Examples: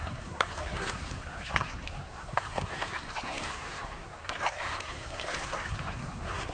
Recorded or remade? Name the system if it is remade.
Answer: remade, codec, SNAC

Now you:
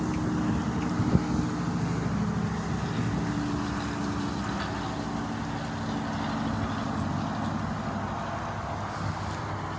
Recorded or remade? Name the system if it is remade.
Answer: recorded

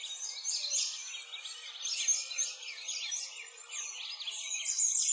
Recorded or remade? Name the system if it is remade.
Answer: recorded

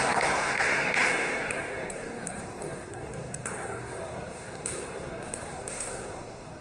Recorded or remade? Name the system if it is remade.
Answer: remade, codec, SNAC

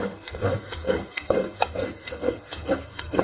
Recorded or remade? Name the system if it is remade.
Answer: remade, codec, SNAC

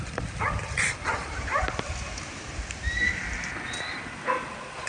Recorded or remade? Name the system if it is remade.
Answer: recorded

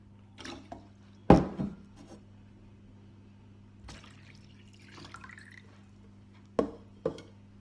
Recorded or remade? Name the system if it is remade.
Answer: recorded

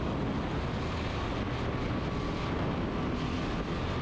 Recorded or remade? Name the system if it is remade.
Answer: recorded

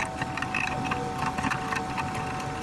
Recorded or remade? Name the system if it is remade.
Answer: recorded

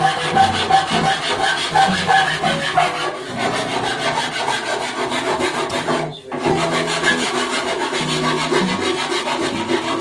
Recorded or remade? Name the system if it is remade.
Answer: recorded